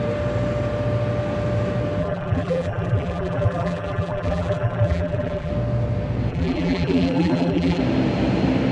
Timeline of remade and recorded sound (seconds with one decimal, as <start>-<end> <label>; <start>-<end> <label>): 0.0-2.0 recorded; 2.0-5.5 remade; 5.5-6.3 recorded; 6.3-7.8 remade; 7.8-8.7 recorded